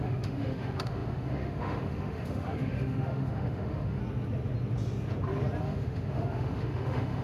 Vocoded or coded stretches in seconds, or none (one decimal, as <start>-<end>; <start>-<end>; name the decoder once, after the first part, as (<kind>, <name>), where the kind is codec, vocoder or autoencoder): 0.0-4.0 (autoencoder, DAC-VAE); 5.6-7.2